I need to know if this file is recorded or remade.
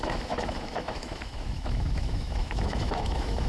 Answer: remade